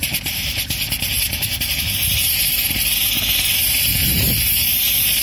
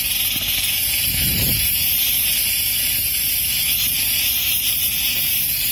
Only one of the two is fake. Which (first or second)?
second